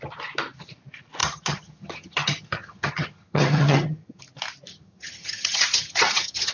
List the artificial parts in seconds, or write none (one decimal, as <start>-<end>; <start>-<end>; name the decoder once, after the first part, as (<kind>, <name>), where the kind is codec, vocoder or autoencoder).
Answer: 1.2-4.2 (vocoder, HiFi-GAN); 4.7-6.5